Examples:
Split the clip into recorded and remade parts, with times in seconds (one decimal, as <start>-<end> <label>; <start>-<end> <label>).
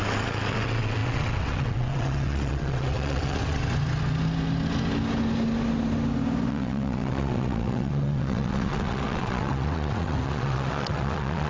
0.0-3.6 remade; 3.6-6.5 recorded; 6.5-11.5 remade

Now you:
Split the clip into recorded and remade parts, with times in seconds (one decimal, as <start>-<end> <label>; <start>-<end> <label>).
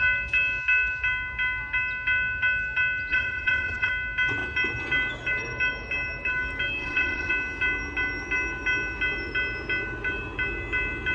0.0-3.1 recorded; 3.1-3.9 remade; 3.9-6.8 recorded; 6.8-7.3 remade; 7.3-11.1 recorded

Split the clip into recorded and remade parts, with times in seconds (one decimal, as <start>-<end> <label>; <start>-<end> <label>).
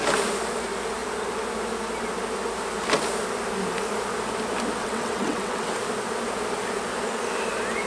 0.0-4.8 recorded; 4.8-5.7 remade; 5.7-7.9 recorded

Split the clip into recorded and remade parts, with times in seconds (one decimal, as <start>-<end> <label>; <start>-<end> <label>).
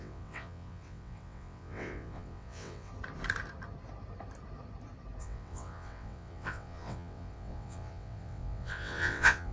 0.0-2.9 remade; 2.9-5.2 recorded; 5.2-9.5 remade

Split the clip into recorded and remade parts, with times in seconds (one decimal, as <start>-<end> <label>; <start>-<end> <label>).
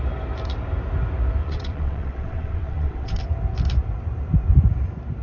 0.0-1.4 recorded; 1.4-3.2 remade; 3.2-5.2 recorded